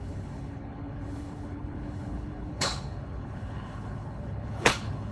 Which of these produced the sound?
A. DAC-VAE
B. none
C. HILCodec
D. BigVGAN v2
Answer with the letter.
C